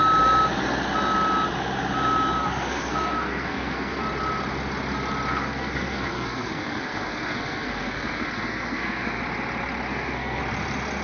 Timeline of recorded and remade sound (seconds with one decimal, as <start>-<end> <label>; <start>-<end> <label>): 0.0-2.4 recorded; 2.4-4.0 remade; 4.0-5.3 recorded; 5.3-9.2 remade; 9.2-9.9 recorded; 9.9-10.4 remade; 10.4-11.0 recorded